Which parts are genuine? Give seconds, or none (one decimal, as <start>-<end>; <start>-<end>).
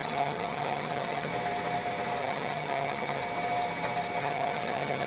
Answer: 1.3-2.2; 3.2-4.2